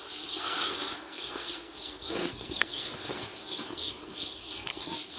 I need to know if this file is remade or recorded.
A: remade